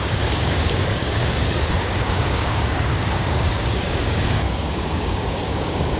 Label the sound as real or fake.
fake